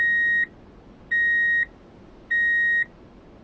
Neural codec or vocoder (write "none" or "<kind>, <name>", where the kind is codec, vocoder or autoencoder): none